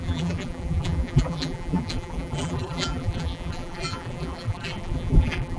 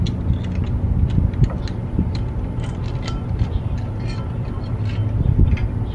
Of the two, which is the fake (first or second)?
first